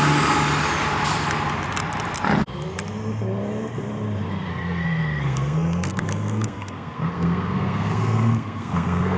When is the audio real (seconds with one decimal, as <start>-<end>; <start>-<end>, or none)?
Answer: 0.0-4.5